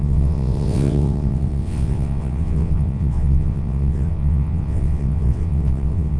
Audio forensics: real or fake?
fake